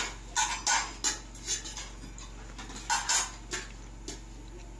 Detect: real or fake real